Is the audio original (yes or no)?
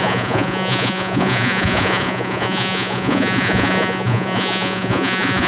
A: no